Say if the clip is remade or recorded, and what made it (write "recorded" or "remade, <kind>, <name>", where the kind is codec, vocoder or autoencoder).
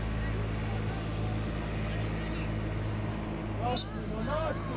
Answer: recorded